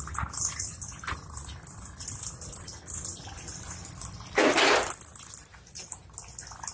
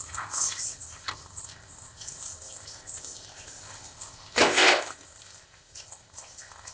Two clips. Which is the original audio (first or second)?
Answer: first